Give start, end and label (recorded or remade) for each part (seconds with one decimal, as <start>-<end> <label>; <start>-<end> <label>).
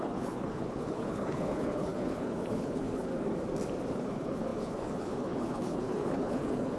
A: 0.0-3.1 remade; 3.1-3.9 recorded; 3.9-6.8 remade